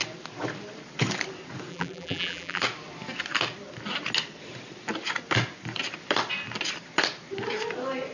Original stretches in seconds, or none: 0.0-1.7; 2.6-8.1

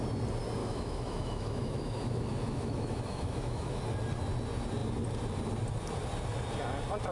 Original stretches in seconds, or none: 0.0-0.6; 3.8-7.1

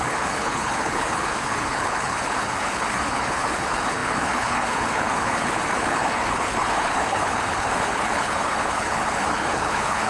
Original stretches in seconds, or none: none

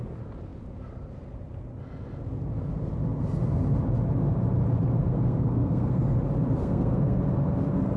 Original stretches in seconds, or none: 0.0-5.0; 6.0-6.6; 7.2-8.0